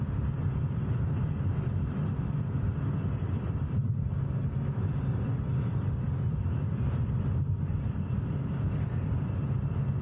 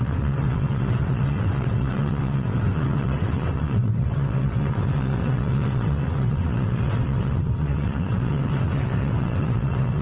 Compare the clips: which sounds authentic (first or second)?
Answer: first